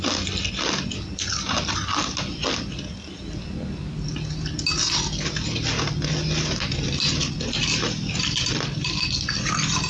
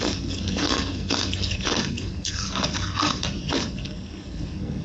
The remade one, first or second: second